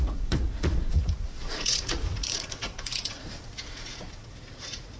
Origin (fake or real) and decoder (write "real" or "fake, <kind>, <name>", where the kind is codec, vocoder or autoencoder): fake, vocoder, Vocos